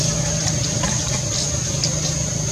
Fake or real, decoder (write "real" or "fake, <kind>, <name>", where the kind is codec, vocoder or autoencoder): real